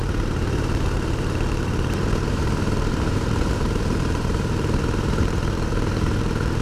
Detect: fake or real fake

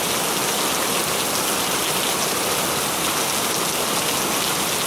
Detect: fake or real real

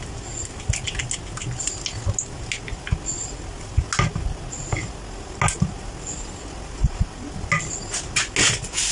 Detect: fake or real real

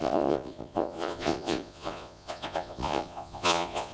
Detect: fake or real fake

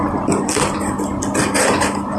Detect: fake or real fake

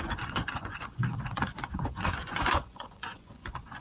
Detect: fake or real fake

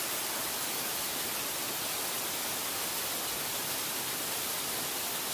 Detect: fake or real real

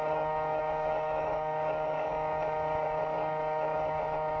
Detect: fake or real fake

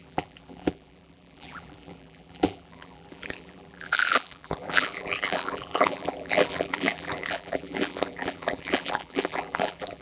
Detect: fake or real fake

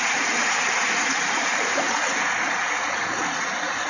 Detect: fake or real fake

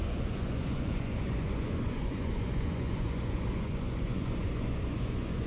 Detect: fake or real fake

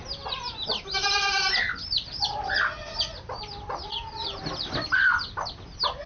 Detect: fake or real real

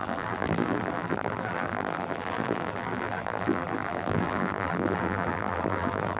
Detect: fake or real fake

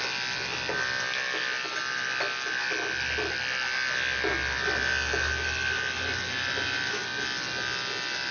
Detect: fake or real real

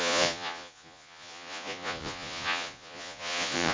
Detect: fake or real fake